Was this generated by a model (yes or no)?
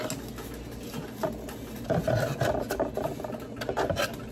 no